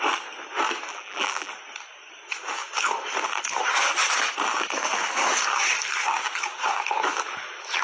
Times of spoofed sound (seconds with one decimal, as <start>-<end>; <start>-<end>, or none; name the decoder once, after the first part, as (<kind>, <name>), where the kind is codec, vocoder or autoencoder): 0.9-1.5 (vocoder, BigVGAN v2)